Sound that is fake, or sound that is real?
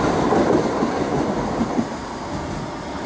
real